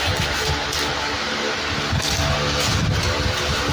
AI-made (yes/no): no